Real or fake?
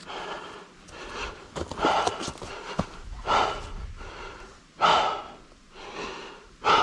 real